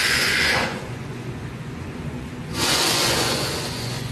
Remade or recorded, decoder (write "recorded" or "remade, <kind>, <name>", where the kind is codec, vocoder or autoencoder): remade, vocoder, Vocos